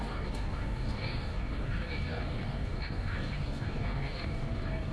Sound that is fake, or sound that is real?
fake